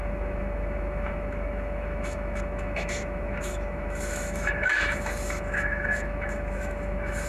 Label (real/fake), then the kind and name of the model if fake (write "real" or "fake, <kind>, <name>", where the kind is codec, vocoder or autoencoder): fake, autoencoder, DAC-VAE